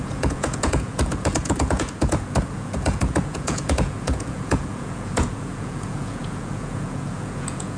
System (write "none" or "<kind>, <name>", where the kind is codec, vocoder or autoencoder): vocoder, Vocos